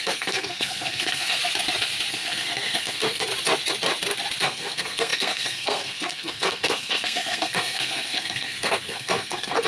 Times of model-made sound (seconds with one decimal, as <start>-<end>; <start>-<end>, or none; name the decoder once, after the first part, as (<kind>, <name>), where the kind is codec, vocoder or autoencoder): 0.0-1.4 (codec, SNAC); 2.1-3.3; 4.4-9.7